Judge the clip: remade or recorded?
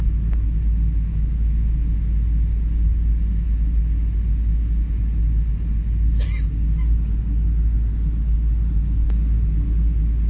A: recorded